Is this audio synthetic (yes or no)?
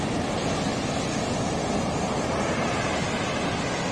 no